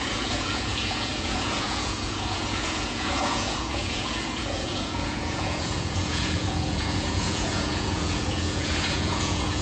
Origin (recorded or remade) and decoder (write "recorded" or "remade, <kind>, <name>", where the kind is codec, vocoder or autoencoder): remade, vocoder, Vocos